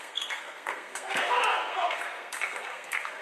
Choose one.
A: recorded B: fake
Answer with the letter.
B